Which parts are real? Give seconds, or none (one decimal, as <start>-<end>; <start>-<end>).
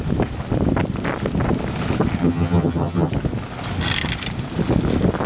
0.0-2.2; 3.1-5.3